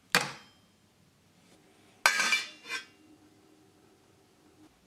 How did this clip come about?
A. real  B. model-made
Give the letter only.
A